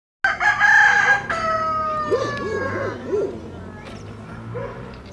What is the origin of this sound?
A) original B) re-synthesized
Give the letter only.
A